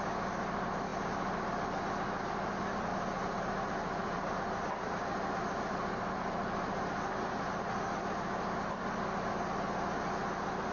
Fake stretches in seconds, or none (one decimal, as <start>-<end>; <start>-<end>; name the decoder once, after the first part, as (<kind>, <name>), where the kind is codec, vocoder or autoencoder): 2.9-7.1 (vocoder, BigVGAN v2)

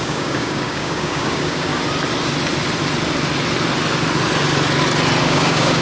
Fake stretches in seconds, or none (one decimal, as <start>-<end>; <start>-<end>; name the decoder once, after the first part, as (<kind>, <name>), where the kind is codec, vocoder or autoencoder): 0.0-1.7 (codec, DAC); 5.2-5.8

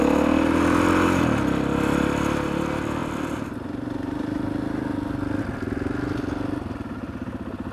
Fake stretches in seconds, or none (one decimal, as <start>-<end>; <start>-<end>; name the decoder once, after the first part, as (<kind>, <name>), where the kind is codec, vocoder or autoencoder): none

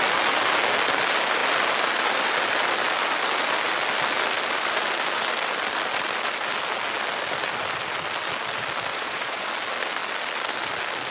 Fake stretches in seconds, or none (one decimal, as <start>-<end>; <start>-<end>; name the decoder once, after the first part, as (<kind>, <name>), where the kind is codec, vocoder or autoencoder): 8.9-9.5 (vocoder, Vocos)